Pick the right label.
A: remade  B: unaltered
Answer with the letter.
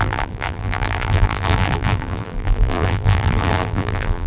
A